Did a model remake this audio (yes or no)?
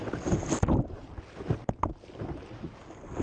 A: no